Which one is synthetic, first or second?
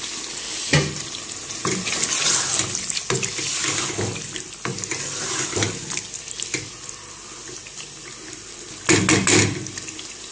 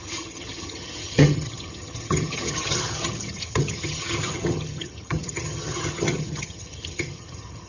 second